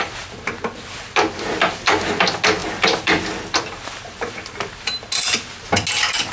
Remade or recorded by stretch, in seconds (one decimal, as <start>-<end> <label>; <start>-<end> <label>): 0.0-2.6 recorded; 2.6-4.6 remade; 4.6-6.3 recorded